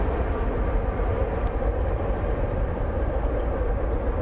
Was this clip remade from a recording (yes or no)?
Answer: no